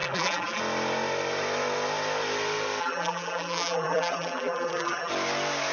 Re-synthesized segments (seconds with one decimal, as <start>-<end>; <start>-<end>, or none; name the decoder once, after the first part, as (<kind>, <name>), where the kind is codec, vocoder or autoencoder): 0.0-0.6 (vocoder, BigVGAN v2); 2.8-5.1